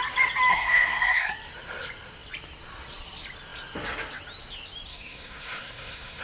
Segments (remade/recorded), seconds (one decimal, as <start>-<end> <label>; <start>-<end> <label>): 0.0-0.5 recorded; 0.5-1.3 remade; 1.3-4.9 recorded; 4.9-6.2 remade

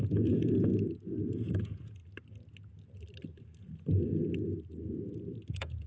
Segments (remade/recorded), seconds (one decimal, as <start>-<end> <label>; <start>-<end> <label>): 0.0-0.7 remade; 0.7-1.3 recorded; 1.3-2.0 remade; 2.0-5.5 recorded; 5.5-5.9 remade

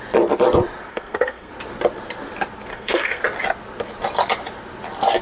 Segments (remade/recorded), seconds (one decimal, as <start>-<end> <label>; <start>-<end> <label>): 0.0-0.9 recorded; 0.9-1.5 remade; 1.5-2.7 recorded; 2.7-3.2 remade; 3.2-5.2 recorded

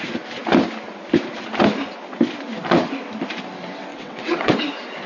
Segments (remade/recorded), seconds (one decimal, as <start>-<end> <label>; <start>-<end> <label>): 0.0-3.9 recorded; 3.9-4.5 remade; 4.5-5.1 recorded